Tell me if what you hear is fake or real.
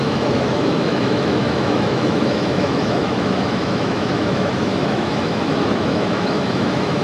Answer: fake